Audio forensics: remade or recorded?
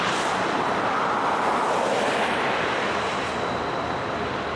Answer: recorded